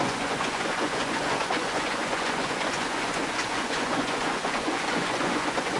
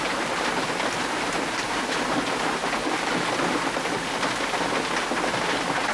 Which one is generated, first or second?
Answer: first